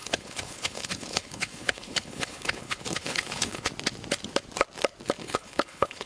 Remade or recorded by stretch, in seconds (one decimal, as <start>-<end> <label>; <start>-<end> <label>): 0.0-3.7 remade; 3.7-5.2 recorded; 5.2-6.1 remade